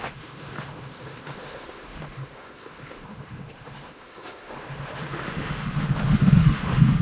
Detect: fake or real fake